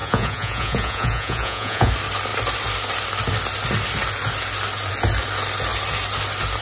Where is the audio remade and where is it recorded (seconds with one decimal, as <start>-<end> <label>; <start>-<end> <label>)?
0.0-1.9 remade; 1.9-6.6 recorded